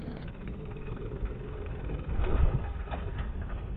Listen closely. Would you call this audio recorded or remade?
remade